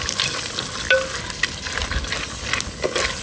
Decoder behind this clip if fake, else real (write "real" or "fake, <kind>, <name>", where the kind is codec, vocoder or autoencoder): real